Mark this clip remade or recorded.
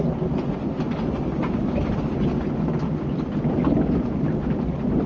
recorded